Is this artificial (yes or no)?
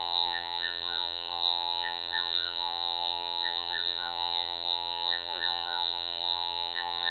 yes